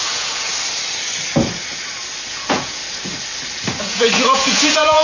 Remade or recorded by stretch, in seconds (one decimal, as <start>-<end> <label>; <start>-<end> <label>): 0.0-0.5 remade; 0.5-2.3 recorded; 2.3-2.8 remade; 2.8-3.8 recorded; 3.8-5.0 remade